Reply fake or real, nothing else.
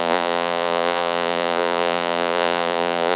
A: fake